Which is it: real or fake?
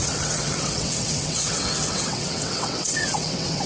fake